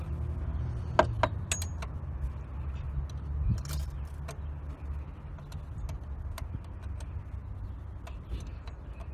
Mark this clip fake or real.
real